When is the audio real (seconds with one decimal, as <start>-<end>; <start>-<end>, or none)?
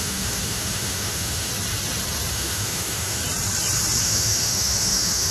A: 1.5-2.3; 3.2-4.0